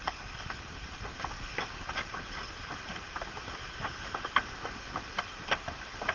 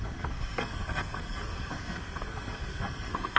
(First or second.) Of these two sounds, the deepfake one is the second